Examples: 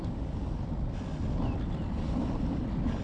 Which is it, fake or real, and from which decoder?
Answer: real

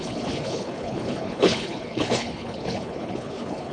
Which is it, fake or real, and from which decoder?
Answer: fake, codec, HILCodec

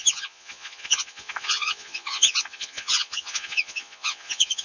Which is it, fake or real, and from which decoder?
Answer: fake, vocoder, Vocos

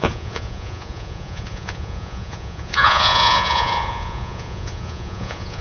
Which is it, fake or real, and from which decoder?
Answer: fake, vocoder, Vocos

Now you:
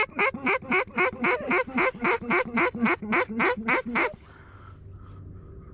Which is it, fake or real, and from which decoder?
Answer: real